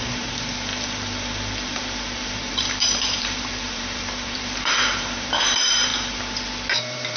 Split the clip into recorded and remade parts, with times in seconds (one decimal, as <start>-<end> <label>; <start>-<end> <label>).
0.0-5.9 remade; 5.9-6.8 recorded; 6.8-7.2 remade